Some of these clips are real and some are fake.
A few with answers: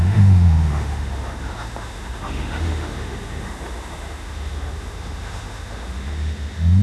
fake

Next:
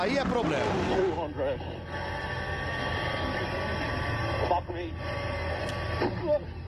real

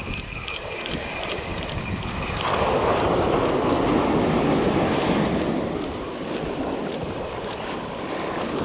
real